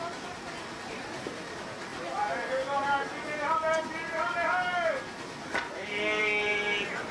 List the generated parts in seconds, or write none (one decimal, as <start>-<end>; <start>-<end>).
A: none